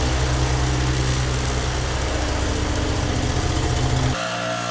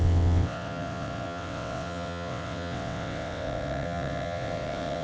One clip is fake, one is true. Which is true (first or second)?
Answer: first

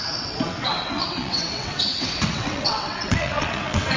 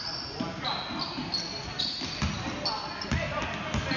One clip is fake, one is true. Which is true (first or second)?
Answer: second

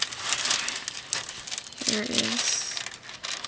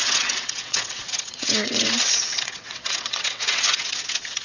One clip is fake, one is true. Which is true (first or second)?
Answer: first